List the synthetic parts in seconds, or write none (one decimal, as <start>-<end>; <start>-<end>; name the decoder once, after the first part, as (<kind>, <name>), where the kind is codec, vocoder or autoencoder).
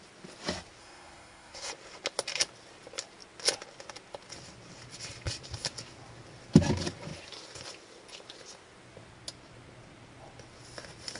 0.8-1.7 (codec, SNAC)